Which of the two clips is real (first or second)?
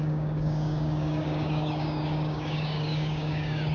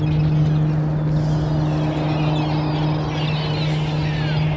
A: second